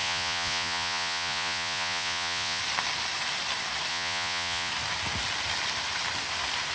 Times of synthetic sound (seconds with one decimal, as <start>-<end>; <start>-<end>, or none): 0.0-2.6; 3.9-4.7

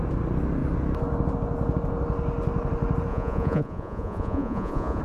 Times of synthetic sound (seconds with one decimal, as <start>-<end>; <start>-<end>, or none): 3.1-5.0

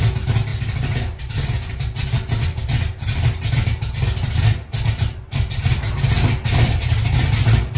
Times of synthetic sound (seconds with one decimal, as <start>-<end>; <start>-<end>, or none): none

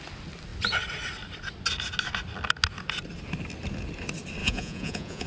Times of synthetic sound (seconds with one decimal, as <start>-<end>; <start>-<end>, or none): 4.4-5.3

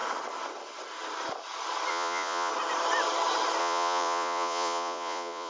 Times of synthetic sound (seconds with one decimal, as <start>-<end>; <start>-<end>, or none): 1.9-2.5; 3.6-5.5

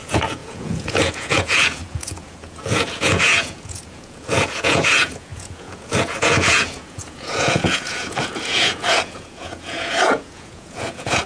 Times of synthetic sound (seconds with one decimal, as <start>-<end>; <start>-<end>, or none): 0.0-11.3

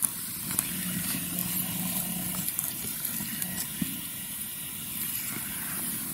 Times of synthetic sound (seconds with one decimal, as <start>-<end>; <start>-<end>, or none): 3.7-4.7